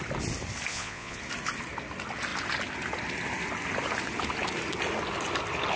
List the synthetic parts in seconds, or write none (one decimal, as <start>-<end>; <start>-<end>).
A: 0.7-1.2